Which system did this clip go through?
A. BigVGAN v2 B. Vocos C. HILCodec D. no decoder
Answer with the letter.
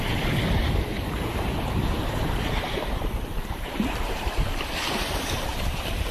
A